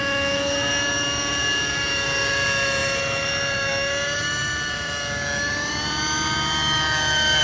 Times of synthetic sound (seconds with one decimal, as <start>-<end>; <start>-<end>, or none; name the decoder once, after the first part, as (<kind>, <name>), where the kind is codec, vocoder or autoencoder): none